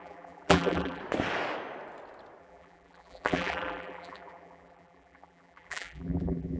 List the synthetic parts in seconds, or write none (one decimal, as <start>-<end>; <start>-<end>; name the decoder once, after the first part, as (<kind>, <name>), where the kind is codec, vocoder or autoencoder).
0.0-1.0 (vocoder, BigVGAN v2); 2.4-6.6